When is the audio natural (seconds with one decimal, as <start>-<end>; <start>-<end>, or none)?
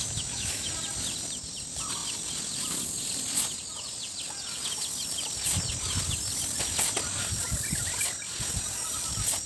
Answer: 0.7-9.5